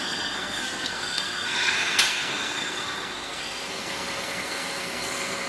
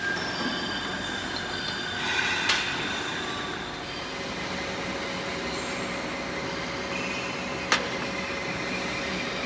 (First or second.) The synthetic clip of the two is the first